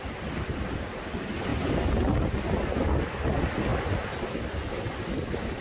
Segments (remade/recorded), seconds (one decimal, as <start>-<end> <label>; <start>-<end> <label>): 0.0-5.6 recorded